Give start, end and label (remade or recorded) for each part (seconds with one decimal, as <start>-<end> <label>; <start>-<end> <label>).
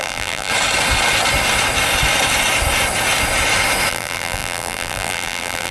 0.0-0.5 remade; 0.5-3.9 recorded; 3.9-5.7 remade